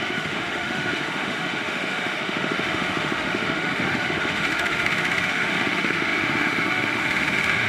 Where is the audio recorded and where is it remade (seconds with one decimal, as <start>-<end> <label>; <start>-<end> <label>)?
0.0-7.7 remade